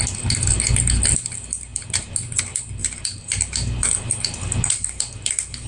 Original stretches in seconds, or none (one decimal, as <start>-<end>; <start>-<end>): 0.0-1.7; 2.4-2.8

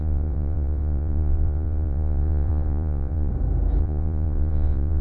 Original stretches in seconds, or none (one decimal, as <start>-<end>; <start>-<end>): 3.3-3.8

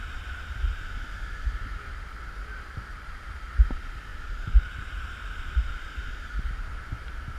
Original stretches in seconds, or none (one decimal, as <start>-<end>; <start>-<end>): 0.0-2.9; 3.5-4.1; 4.6-7.4

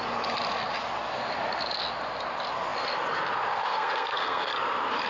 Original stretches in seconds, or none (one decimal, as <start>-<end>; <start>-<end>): 0.0-3.7; 4.5-5.1

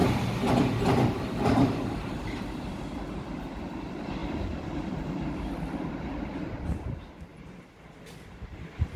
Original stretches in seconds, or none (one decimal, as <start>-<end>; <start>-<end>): 0.0-9.0

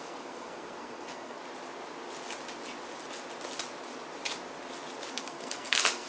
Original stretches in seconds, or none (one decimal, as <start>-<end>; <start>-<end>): 1.4-5.1